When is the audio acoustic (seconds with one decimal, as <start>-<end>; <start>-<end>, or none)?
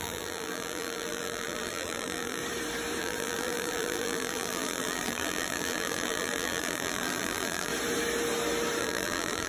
2.4-3.0; 7.7-8.8